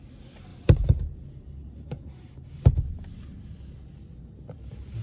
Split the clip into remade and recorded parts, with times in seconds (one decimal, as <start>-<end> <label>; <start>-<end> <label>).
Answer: 0.0-0.5 recorded; 0.5-2.3 remade; 2.3-5.0 recorded